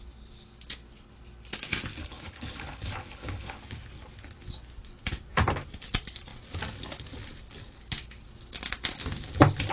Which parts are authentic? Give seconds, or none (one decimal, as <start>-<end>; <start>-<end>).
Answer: 0.0-2.0; 3.6-9.7